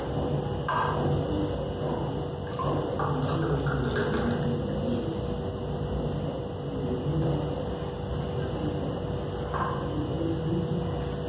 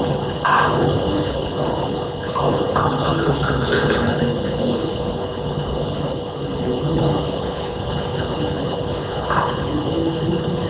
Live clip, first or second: first